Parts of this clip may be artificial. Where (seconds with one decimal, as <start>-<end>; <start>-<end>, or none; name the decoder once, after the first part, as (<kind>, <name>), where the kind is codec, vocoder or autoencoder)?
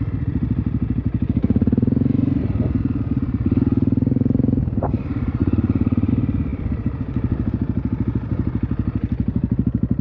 5.4-6.1 (vocoder, Vocos)